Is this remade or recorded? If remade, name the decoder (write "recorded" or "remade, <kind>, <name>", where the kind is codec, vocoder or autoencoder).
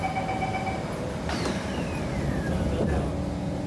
recorded